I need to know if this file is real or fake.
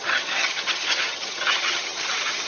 fake